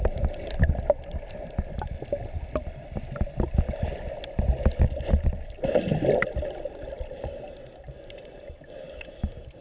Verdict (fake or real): real